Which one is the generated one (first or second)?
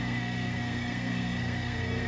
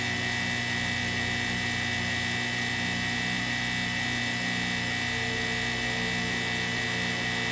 first